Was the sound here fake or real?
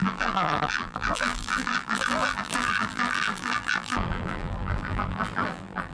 fake